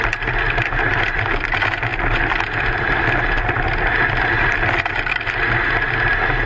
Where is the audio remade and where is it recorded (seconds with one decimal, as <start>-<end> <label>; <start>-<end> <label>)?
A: 0.0-6.5 recorded